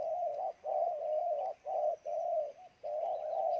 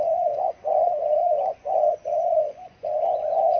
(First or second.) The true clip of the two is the first